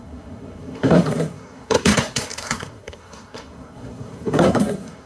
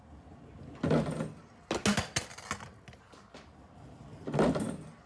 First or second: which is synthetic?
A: first